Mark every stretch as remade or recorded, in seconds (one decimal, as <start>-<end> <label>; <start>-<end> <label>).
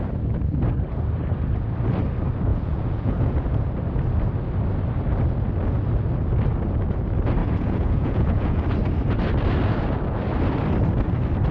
0.0-2.5 recorded; 2.5-3.7 remade; 3.7-7.4 recorded; 7.4-8.6 remade; 8.6-11.5 recorded